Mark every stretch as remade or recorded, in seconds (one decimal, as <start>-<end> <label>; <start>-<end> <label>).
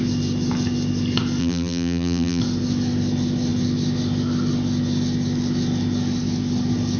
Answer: 0.0-1.4 recorded; 1.4-2.4 remade; 2.4-7.0 recorded